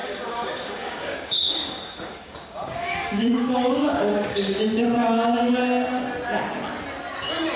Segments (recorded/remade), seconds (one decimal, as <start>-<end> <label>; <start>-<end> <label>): 0.0-4.6 remade; 4.6-7.6 recorded

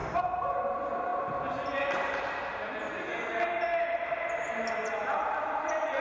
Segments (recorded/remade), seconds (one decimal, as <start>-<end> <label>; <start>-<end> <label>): 0.0-6.0 recorded

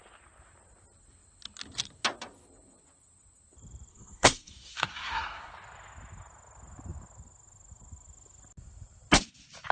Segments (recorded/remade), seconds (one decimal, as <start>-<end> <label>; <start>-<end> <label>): 0.0-3.9 recorded; 3.9-5.5 remade; 5.5-9.7 recorded

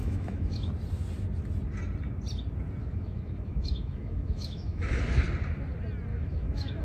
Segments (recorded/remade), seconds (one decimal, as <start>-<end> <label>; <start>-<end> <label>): 0.0-0.7 remade; 0.7-2.8 recorded; 2.8-5.0 remade; 5.0-6.1 recorded; 6.1-6.8 remade

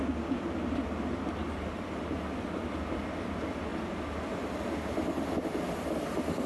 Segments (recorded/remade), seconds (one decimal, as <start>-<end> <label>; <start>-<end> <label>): 0.0-6.5 recorded